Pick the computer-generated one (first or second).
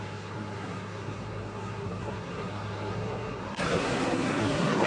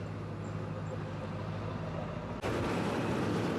first